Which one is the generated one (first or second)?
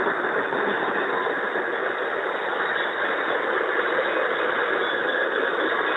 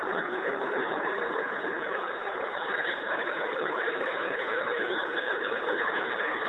second